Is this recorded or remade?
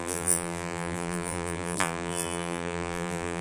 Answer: remade